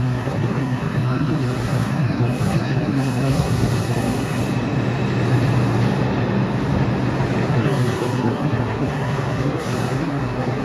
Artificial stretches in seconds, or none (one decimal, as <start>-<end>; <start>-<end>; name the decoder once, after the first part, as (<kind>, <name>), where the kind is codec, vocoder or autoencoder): 0.0-4.4 (codec, SNAC); 7.5-10.6